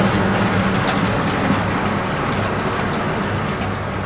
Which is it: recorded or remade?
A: recorded